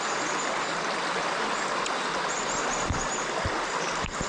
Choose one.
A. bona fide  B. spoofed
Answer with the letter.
A